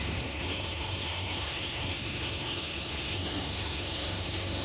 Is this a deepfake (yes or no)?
yes